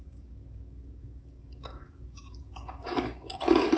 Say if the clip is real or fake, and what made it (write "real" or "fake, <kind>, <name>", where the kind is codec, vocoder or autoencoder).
fake, codec, DAC